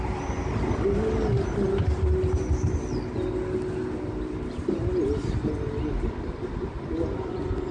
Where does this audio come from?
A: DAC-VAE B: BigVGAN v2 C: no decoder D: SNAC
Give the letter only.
C